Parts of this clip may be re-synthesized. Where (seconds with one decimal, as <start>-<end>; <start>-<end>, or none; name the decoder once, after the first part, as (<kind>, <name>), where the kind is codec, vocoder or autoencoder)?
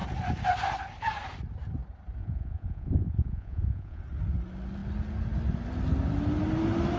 2.2-4.0 (vocoder, Vocos)